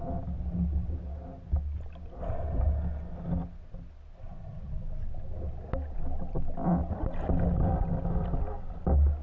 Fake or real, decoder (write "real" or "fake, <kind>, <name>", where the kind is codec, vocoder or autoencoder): real